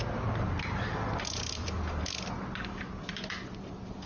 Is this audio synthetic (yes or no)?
no